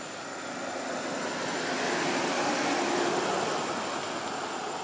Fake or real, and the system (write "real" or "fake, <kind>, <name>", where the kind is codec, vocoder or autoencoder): real